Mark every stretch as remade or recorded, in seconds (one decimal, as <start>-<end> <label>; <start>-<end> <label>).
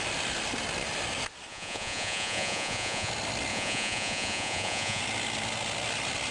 0.0-1.5 recorded; 1.5-3.1 remade; 3.1-3.5 recorded; 3.5-5.0 remade; 5.0-6.3 recorded